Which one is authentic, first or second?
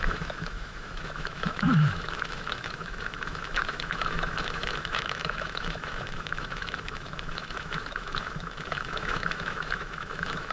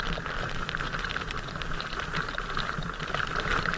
second